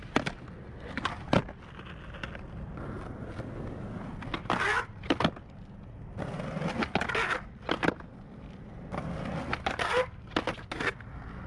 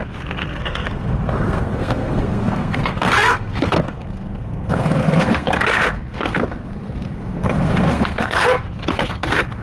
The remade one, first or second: second